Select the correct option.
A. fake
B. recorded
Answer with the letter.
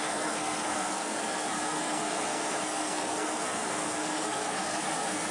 A